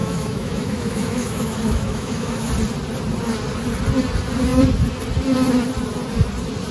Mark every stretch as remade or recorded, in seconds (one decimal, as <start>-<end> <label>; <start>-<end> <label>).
0.0-2.5 remade; 2.5-6.7 recorded